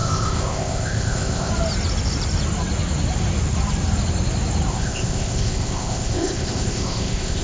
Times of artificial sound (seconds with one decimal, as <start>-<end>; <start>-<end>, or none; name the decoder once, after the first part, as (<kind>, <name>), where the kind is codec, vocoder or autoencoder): 0.0-1.5 (codec, ZipCodec); 4.7-7.4